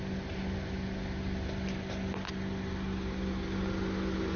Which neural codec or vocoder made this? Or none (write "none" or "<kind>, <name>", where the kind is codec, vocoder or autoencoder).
none